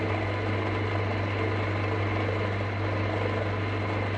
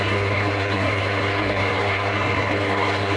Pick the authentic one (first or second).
first